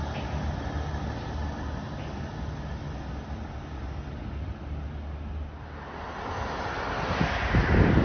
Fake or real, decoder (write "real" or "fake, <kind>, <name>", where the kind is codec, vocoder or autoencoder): real